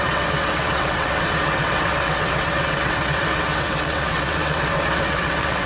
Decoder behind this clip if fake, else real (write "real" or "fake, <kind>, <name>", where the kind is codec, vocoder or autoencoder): fake, vocoder, WaveNeXt